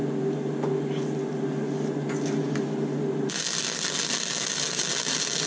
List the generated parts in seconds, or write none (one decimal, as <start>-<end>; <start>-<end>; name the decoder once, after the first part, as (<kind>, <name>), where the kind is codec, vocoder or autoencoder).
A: none